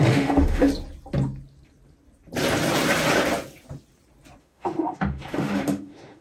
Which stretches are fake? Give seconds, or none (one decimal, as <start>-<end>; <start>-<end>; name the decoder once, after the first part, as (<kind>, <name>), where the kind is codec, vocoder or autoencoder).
0.0-0.7 (autoencoder, DAC-VAE); 4.4-6.2